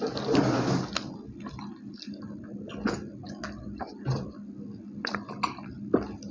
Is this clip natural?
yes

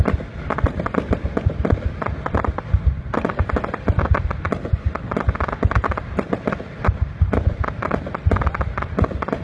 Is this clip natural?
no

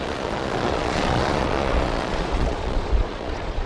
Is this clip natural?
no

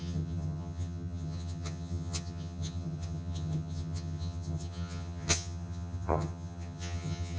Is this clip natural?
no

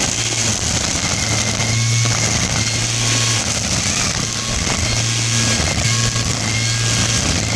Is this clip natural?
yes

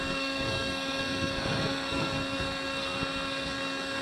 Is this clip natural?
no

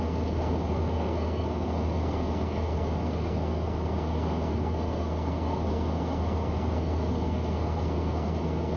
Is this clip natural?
no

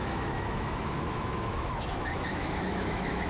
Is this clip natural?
no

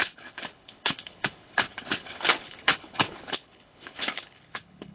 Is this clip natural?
no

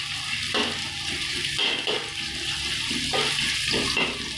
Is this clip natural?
yes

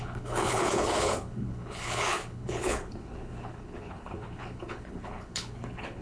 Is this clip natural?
no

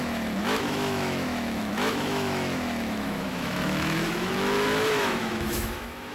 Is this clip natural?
no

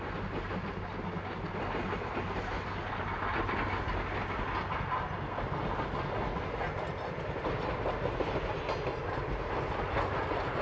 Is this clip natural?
yes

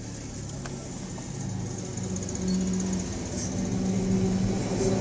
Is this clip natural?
yes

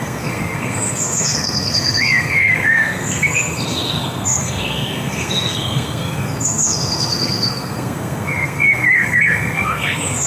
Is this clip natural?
no